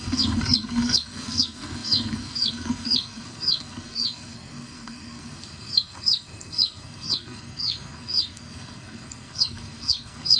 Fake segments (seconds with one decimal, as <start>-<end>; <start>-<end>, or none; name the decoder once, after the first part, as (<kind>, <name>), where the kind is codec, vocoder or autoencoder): 0.0-10.4 (codec, SNAC)